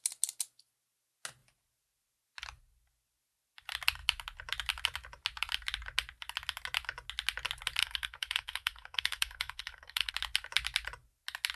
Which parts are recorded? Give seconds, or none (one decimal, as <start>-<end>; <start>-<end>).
0.0-7.8; 10.1-11.6